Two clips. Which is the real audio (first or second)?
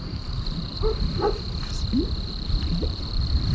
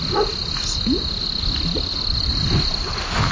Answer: second